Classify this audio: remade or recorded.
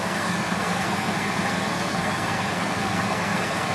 remade